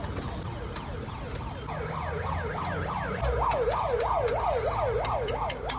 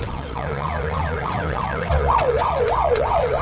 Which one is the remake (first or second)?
second